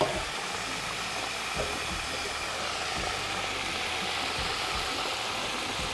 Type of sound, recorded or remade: recorded